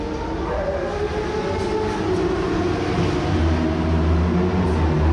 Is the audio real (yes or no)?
yes